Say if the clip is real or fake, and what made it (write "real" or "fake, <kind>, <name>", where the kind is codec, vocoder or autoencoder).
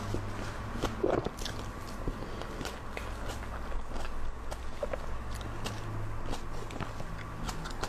real